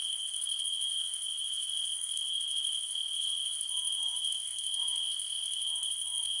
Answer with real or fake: fake